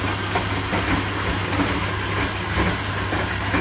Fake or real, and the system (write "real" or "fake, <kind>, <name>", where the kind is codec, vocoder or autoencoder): real